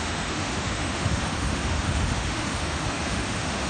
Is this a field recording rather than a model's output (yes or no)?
no